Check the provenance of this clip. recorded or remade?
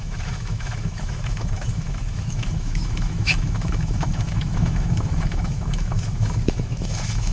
remade